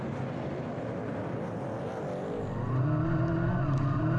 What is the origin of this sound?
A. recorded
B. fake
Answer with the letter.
A